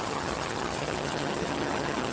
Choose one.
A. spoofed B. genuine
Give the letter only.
A